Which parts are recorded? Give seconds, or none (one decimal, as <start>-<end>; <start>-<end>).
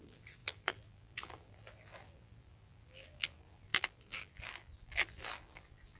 none